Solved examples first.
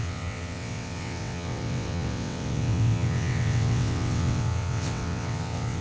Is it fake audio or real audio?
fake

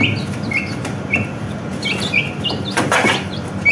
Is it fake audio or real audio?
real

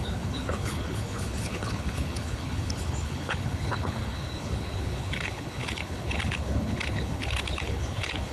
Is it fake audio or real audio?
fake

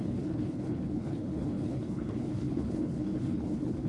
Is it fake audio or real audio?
fake